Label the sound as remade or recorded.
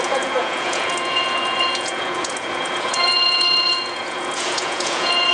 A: remade